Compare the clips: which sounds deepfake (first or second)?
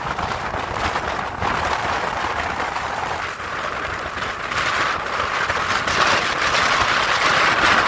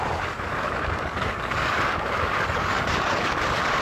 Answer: second